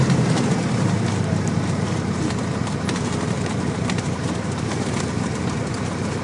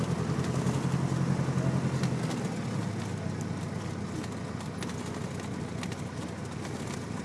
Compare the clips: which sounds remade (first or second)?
first